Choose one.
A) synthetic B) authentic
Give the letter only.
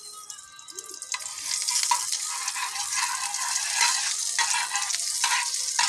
B